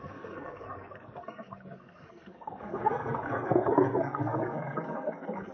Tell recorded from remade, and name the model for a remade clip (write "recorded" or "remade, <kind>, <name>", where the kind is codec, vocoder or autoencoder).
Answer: remade, codec, SNAC